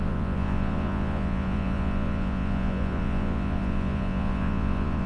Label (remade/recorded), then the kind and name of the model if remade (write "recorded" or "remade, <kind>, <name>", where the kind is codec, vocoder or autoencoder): remade, vocoder, Vocos